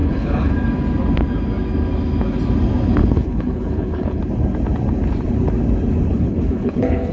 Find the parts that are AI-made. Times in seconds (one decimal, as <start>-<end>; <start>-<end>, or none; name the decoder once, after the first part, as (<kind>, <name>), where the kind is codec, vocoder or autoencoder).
0.0-0.5 (codec, HILCodec); 3.0-4.2; 6.1-7.1